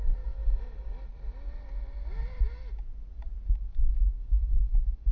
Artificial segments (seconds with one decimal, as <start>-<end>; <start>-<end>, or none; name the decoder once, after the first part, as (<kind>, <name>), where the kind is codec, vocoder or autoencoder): 0.0-0.4 (codec, DAC); 3.5-5.1